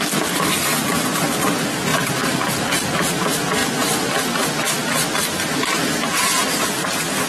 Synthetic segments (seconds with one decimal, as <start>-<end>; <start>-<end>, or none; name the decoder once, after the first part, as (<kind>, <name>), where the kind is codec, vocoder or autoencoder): 1.9-2.5 (vocoder, BigVGAN v2); 3.6-6.3